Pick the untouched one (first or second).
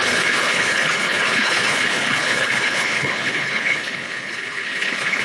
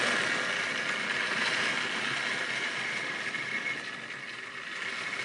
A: second